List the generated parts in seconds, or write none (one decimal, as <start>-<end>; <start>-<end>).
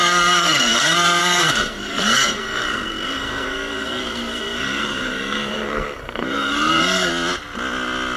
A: 0.0-7.1